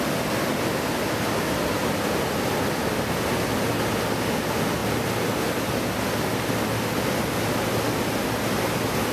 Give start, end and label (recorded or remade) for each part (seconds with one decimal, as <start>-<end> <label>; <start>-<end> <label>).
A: 0.0-9.1 recorded